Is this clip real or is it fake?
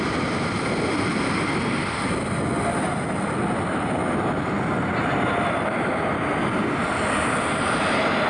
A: real